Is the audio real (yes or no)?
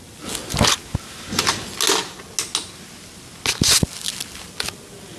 yes